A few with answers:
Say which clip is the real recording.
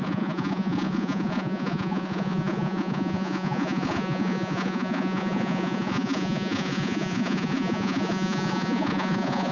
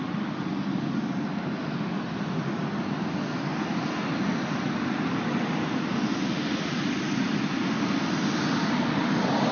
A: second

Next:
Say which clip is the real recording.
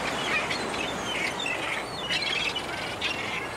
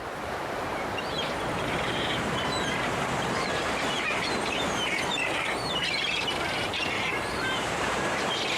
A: first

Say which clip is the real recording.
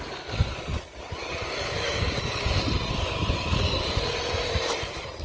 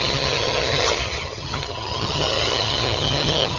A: first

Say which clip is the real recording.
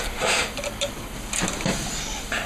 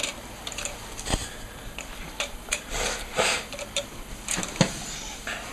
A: first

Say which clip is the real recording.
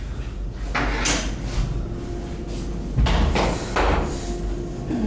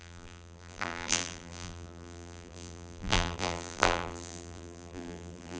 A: first